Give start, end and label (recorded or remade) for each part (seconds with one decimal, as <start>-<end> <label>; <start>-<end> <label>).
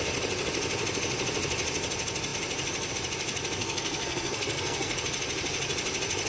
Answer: 0.0-3.6 recorded; 3.6-5.0 remade; 5.0-6.3 recorded